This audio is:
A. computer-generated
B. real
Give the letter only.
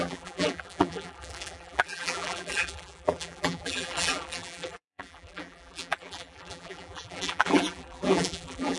A